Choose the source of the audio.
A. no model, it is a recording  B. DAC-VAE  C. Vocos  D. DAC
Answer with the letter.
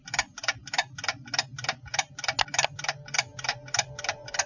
A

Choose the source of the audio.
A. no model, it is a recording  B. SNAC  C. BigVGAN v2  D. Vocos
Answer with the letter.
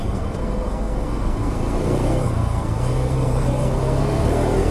B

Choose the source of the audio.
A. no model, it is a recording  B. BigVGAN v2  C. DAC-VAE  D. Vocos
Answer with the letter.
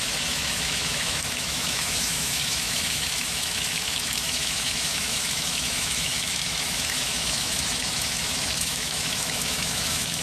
C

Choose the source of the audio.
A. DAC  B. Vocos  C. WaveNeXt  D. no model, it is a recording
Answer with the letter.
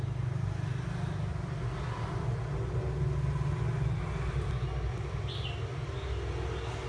D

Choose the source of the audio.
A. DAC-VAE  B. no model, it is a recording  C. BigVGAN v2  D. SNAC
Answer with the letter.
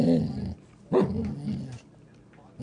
B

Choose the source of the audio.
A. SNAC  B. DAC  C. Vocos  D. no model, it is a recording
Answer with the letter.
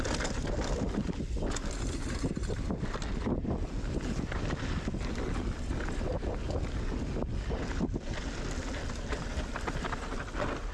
D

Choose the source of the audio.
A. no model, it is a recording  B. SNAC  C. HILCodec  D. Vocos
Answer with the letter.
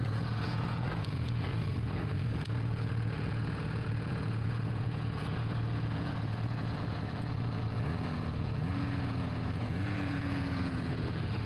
D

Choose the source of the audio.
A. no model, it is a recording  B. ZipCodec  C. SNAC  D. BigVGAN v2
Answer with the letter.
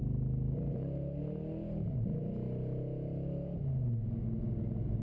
A